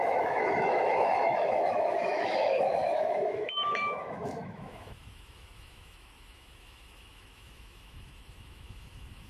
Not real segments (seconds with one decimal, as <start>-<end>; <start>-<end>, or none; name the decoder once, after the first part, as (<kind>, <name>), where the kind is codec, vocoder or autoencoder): 0.0-9.3 (autoencoder, DAC-VAE)